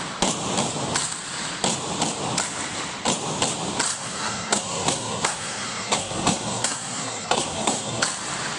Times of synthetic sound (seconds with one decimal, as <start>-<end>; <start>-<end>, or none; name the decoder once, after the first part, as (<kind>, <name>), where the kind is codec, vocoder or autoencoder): 3.9-8.0 (codec, SNAC)